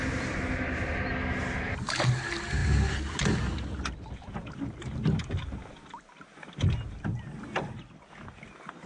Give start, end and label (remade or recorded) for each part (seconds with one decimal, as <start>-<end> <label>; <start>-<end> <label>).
0.0-8.9 recorded